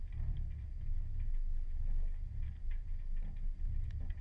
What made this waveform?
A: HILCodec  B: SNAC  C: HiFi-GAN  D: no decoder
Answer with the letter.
D